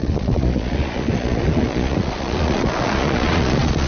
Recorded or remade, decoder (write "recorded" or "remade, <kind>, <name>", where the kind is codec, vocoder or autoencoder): remade, vocoder, Vocos